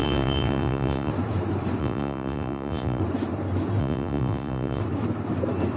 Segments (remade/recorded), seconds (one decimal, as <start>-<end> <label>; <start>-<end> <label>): 0.0-1.1 remade; 1.1-1.8 recorded; 1.8-3.0 remade; 3.0-3.8 recorded; 3.8-4.8 remade; 4.8-5.8 recorded